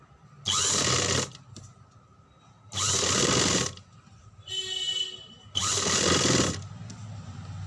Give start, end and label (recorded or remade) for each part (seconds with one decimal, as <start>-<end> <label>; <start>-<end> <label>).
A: 0.0-7.7 recorded